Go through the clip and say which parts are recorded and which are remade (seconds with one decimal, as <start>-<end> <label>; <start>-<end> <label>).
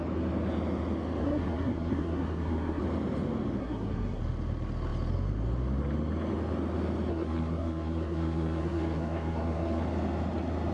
0.0-1.2 recorded; 1.2-2.8 remade; 2.8-3.6 recorded; 3.6-4.2 remade; 4.2-7.1 recorded; 7.1-9.8 remade; 9.8-10.7 recorded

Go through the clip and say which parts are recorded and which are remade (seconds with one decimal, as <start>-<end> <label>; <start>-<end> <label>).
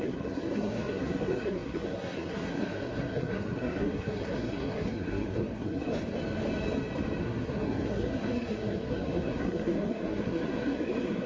0.0-5.9 remade; 5.9-7.2 recorded; 7.2-11.3 remade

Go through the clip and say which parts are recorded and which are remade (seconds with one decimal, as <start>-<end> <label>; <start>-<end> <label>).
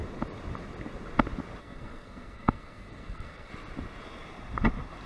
0.0-1.6 recorded; 1.6-3.5 remade; 3.5-5.1 recorded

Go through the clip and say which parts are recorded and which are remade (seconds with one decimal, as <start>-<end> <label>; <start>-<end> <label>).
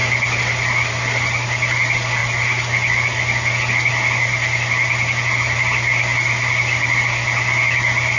0.0-8.2 recorded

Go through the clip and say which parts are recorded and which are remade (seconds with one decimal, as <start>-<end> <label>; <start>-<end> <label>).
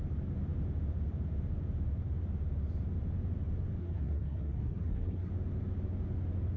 0.0-3.8 recorded; 3.8-5.3 remade; 5.3-6.6 recorded